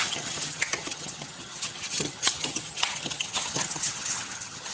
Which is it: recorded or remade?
remade